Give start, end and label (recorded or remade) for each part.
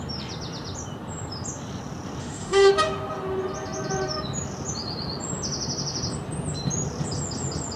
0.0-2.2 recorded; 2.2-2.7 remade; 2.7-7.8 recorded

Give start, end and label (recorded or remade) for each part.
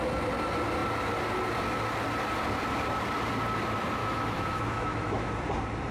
0.0-4.0 recorded; 4.0-5.3 remade; 5.3-5.9 recorded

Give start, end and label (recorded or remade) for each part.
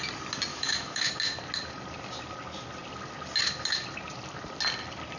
0.0-0.5 recorded; 0.5-1.1 remade; 1.1-5.2 recorded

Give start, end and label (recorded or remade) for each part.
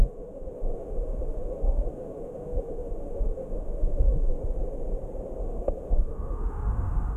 0.0-4.3 remade; 4.3-5.4 recorded; 5.4-7.2 remade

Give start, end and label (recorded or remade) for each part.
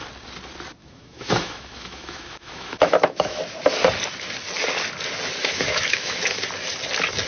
0.0-0.8 recorded; 0.8-3.4 remade; 3.4-5.4 recorded; 5.4-6.4 remade; 6.4-7.3 recorded